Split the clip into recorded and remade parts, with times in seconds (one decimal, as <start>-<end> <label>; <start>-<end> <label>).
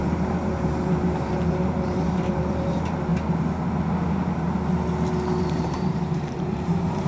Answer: 0.0-3.1 remade; 3.1-5.4 recorded; 5.4-7.1 remade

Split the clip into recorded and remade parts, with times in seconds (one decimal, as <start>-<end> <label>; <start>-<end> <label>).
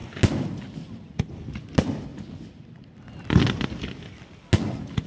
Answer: 0.0-2.1 recorded; 2.1-3.4 remade; 3.4-5.1 recorded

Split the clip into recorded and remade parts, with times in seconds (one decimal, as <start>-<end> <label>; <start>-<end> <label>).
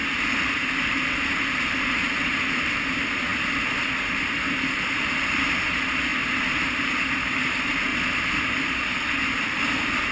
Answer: 0.0-10.1 remade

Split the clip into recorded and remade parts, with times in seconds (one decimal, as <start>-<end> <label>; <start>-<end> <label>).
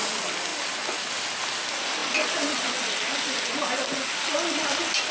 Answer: 0.0-0.5 recorded; 0.5-1.1 remade; 1.1-5.1 recorded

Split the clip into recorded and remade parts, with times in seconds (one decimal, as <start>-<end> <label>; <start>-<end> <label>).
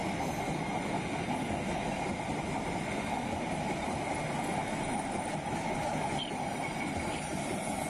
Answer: 0.0-1.0 remade; 1.0-4.6 recorded; 4.6-7.4 remade; 7.4-7.9 recorded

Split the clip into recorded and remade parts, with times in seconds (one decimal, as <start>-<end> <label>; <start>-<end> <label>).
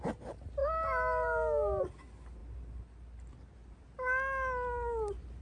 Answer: 0.0-5.4 recorded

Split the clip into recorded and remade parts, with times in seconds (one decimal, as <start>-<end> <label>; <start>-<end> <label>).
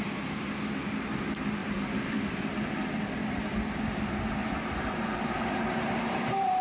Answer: 0.0-1.6 recorded; 1.6-2.4 remade; 2.4-6.6 recorded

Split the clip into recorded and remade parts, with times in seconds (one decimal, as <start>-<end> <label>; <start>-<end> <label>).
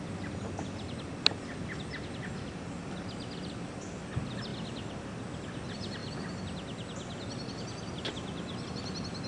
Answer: 0.0-9.3 recorded